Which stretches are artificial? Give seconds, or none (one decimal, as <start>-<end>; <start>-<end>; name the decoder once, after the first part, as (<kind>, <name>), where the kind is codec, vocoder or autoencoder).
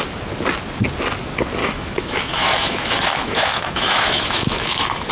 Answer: 1.6-5.1 (autoencoder, DAC-VAE)